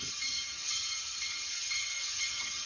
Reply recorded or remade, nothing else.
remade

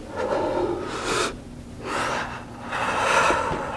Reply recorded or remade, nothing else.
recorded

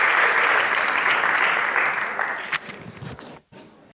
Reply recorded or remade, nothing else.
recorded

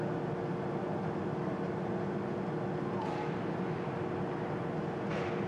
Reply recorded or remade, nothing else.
recorded